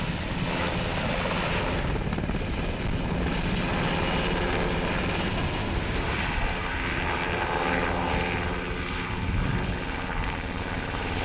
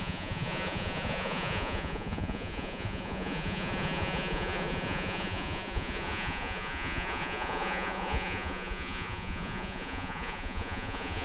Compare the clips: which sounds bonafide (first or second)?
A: first